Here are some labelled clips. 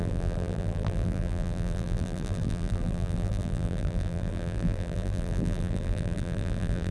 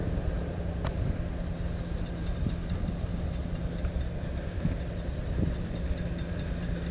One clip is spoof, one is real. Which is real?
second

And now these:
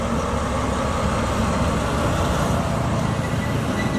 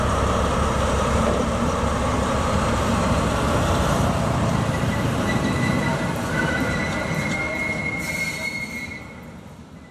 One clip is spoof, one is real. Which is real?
first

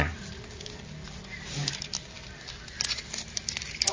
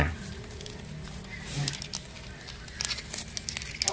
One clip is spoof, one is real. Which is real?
second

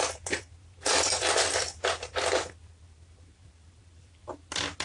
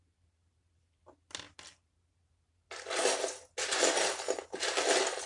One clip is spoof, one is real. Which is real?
second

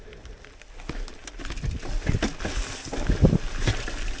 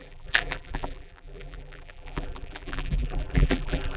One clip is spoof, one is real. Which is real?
first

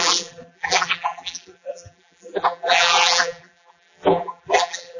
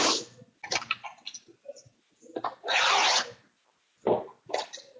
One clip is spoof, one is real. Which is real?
second